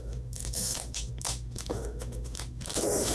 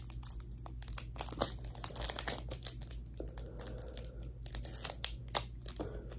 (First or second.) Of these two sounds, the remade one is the first